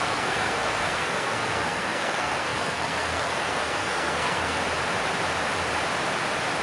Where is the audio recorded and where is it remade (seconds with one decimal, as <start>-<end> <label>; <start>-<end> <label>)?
0.0-4.6 remade; 4.6-6.6 recorded